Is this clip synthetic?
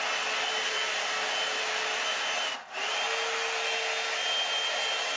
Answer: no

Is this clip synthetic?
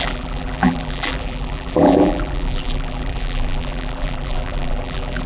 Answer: yes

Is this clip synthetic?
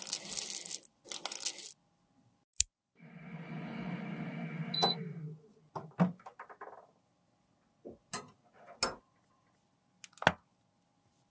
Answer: no